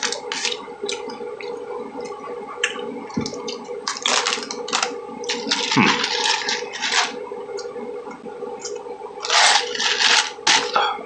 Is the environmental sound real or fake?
real